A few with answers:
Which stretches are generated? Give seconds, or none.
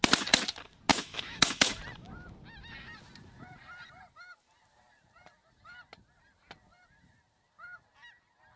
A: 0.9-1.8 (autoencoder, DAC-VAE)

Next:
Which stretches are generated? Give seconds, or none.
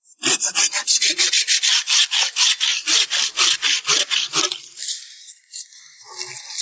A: 2.7-4.4 (vocoder, BigVGAN v2)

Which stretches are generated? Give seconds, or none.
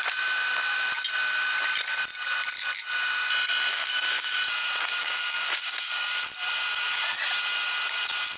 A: 3.7-4.4 (codec, DAC); 5.0-6.2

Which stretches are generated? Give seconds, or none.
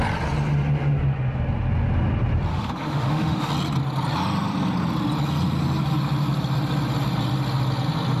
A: 2.5-3.5 (autoencoder, DAC-VAE)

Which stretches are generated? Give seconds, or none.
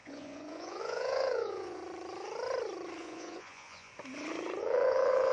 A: 0.0-1.8 (vocoder, Vocos); 3.0-3.9; 4.6-5.3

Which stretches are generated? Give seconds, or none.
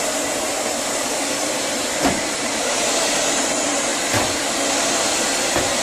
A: 0.0-3.9 (vocoder, BigVGAN v2)